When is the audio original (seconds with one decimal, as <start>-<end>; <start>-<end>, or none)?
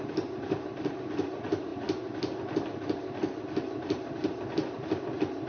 none